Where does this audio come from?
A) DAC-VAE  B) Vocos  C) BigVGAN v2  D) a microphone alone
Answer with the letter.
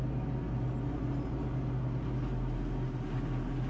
D